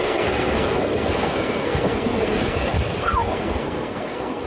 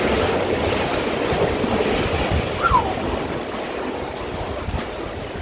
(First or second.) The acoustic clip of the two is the second